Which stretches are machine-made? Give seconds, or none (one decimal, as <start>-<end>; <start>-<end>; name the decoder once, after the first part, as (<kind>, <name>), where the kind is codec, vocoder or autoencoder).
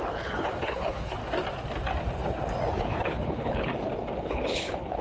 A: 0.0-1.2 (codec, HILCodec); 2.8-3.7; 4.2-5.0